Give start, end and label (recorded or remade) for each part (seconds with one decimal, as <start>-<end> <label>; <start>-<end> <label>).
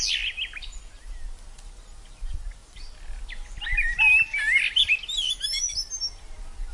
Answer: 0.0-6.7 recorded